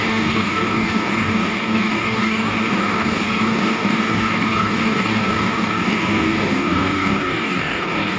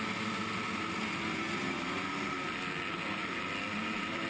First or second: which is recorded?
second